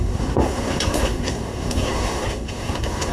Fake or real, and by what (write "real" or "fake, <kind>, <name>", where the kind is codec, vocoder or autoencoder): fake, codec, SNAC